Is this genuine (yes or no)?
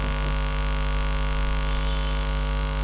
yes